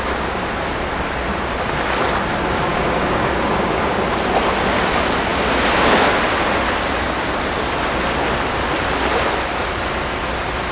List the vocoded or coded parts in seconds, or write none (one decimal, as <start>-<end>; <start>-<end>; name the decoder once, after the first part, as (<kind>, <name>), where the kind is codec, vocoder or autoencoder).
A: 2.7-4.0 (codec, DAC)